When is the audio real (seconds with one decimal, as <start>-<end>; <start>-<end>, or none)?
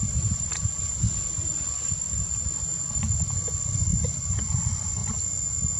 0.0-5.8